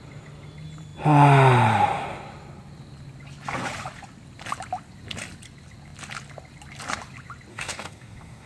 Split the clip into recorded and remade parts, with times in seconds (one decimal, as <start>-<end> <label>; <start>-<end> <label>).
0.0-7.5 recorded; 7.5-8.5 remade